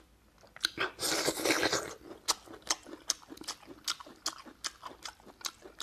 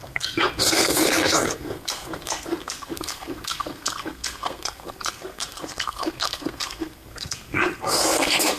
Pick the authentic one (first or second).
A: first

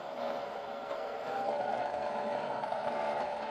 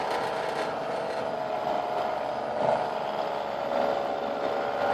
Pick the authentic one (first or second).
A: second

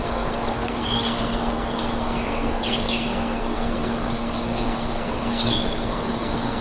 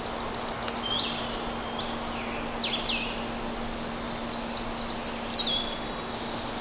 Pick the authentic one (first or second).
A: second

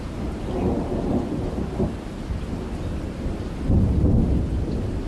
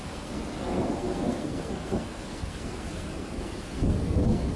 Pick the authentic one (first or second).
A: first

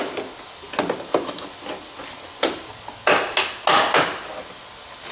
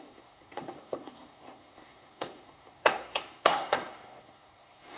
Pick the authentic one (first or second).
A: first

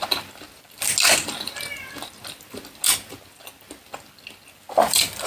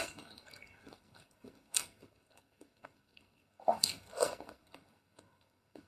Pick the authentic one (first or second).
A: first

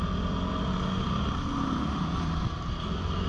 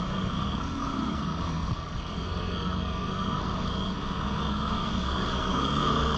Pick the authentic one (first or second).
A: first